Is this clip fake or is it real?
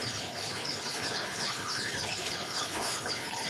fake